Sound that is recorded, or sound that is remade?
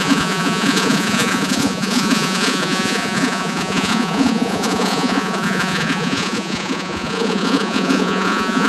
remade